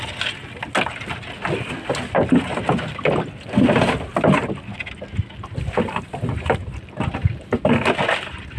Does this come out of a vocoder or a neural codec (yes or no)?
no